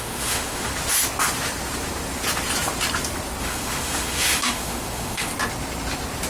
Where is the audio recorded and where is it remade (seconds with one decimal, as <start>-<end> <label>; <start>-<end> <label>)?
0.0-0.7 remade; 0.7-3.4 recorded; 3.4-5.3 remade; 5.3-6.3 recorded